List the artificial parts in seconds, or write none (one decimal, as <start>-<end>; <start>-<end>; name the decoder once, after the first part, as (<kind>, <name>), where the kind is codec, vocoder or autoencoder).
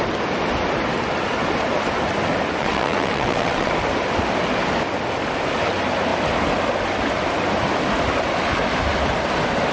2.6-3.7 (vocoder, WaveNeXt)